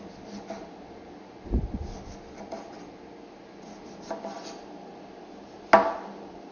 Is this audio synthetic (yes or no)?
no